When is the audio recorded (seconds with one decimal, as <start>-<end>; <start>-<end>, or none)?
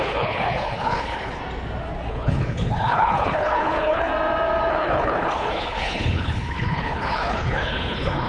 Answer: 1.4-2.1; 4.1-4.7